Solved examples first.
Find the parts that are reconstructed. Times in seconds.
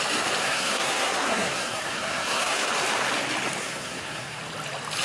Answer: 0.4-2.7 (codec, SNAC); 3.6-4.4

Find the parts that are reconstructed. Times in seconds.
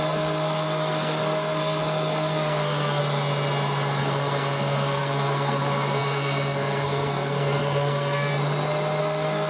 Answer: 0.0-3.0 (codec, SNAC); 4.0-8.3; 9.0-9.5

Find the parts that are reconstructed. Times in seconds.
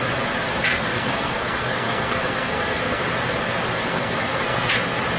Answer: 0.7-3.0 (codec, SNAC); 3.9-4.7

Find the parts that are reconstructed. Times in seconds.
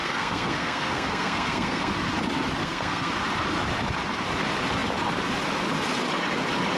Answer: 0.0-1.9 (codec, SNAC); 2.6-3.1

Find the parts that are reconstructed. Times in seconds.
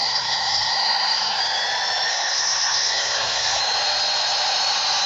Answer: 0.0-1.4 (codec, SNAC); 2.1-3.6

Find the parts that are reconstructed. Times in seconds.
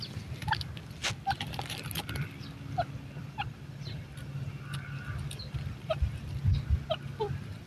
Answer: none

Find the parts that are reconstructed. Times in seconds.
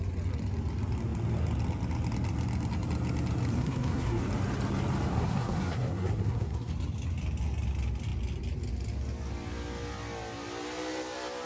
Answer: 3.5-4.2 (codec, SNAC); 5.1-6.7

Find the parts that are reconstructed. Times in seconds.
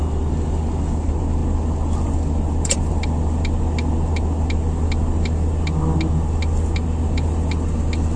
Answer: none